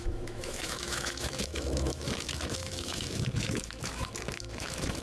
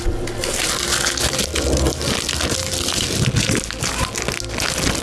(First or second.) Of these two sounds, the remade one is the first